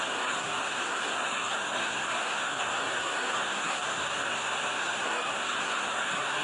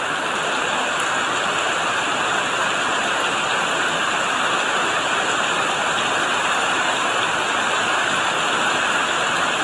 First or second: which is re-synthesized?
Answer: first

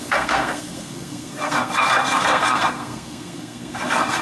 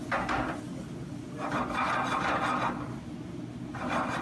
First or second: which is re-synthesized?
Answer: first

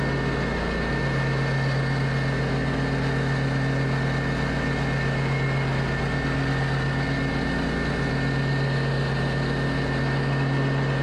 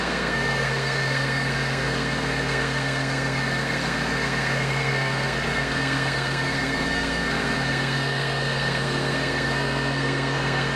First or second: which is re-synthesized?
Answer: second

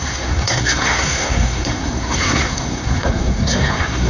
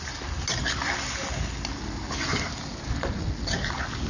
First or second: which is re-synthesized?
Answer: first